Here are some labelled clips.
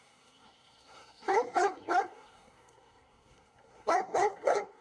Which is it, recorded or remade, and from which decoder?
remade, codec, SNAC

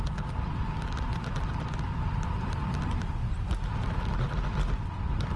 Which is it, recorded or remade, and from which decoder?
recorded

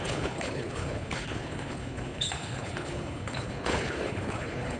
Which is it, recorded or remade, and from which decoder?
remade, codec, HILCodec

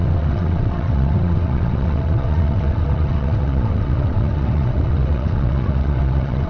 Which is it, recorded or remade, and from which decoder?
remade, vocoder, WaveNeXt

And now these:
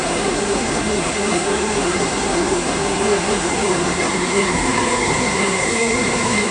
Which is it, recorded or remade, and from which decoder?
remade, codec, SNAC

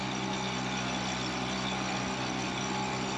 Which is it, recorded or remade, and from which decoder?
recorded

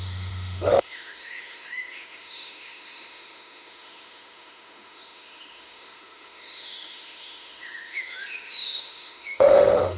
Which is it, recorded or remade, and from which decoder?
remade, autoencoder, DAC-VAE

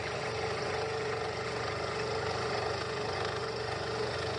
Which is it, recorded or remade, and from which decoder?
remade, vocoder, Vocos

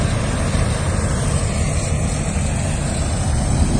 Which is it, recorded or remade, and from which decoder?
recorded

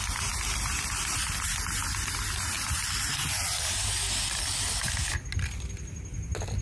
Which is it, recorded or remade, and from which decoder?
recorded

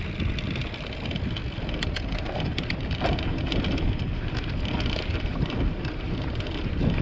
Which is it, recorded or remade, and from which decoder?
recorded